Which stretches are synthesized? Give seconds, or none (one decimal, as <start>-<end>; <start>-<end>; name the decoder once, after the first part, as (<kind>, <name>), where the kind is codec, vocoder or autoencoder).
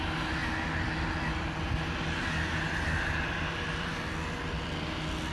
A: none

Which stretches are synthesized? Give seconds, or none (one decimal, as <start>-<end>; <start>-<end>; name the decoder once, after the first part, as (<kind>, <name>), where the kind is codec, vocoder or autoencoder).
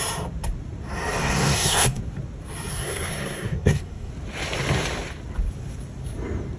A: 1.2-2.0 (codec, SNAC); 2.7-4.1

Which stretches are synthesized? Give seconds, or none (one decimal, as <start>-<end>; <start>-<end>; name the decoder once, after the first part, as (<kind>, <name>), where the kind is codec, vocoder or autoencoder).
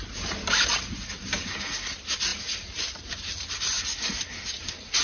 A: none